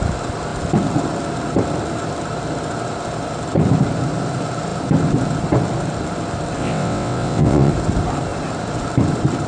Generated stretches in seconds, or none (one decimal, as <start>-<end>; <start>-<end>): 6.6-7.7